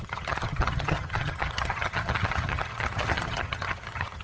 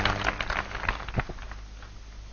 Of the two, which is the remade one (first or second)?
first